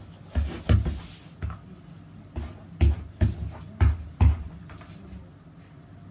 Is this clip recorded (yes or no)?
yes